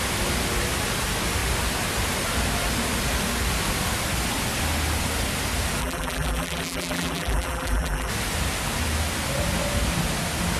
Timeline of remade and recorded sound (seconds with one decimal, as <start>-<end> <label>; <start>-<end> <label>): 0.0-5.8 recorded; 5.8-8.1 remade; 8.1-10.6 recorded